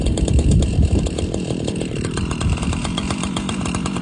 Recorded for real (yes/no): no